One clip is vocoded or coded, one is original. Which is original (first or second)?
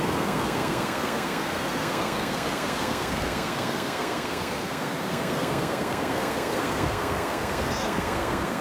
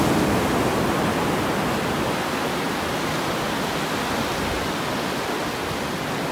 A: second